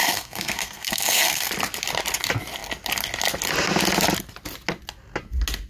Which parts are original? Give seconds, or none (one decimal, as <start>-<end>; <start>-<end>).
1.5-5.7